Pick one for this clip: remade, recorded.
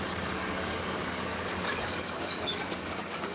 remade